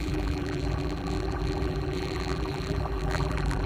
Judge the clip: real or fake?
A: fake